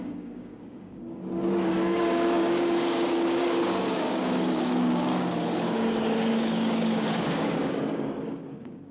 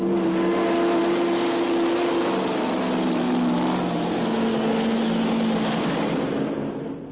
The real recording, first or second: second